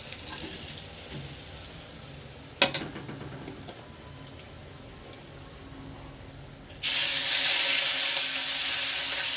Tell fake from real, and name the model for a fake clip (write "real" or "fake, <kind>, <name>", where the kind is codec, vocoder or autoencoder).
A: real